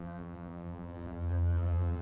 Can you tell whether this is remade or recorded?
remade